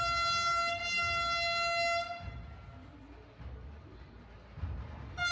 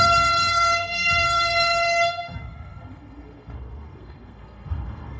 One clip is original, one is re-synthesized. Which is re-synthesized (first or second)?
second